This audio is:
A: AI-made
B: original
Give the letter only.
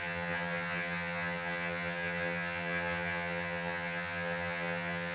A